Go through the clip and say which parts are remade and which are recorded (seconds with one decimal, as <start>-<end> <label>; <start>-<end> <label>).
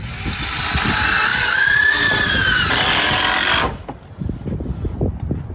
0.0-5.5 recorded